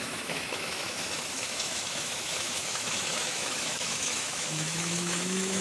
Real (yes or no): no